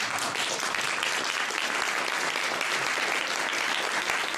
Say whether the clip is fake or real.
real